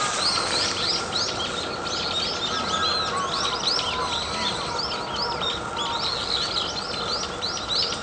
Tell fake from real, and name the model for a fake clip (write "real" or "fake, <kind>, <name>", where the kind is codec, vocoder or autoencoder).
real